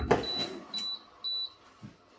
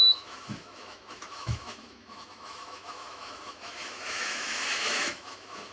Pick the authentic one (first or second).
first